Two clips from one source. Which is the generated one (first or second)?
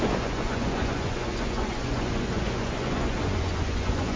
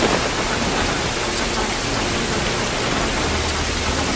first